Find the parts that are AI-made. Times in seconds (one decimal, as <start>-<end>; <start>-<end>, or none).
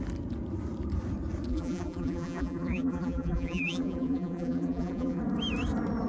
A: 1.5-5.2